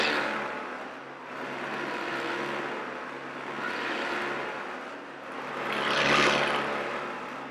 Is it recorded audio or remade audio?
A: recorded